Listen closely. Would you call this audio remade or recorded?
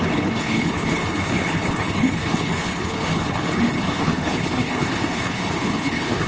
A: remade